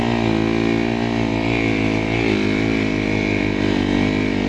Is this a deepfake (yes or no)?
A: no